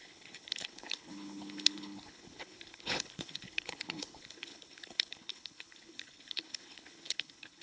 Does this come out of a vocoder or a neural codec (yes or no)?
yes